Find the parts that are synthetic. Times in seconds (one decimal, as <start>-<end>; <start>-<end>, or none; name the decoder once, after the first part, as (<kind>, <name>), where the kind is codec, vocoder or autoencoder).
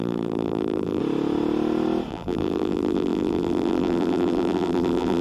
0.0-1.0 (vocoder, BigVGAN v2); 2.1-5.2